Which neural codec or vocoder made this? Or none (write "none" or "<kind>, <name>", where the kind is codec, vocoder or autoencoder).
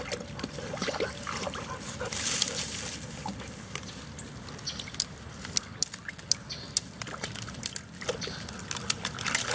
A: none